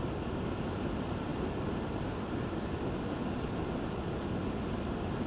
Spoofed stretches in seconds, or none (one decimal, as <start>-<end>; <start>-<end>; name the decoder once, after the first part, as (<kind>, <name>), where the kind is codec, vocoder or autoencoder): none